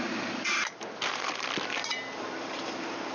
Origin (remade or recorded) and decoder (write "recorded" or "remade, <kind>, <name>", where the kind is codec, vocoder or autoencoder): remade, vocoder, BigVGAN v2